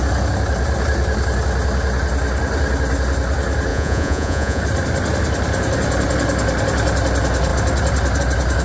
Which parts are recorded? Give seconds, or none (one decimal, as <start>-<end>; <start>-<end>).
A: 0.0-3.7; 4.6-8.6